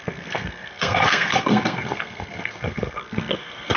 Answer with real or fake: fake